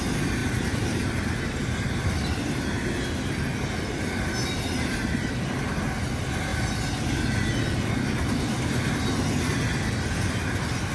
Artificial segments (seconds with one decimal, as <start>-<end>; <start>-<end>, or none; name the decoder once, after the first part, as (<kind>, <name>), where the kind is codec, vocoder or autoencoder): none